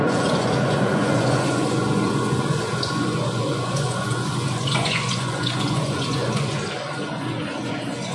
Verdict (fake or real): fake